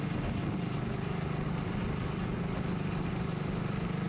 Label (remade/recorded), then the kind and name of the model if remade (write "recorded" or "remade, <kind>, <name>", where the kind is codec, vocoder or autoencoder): recorded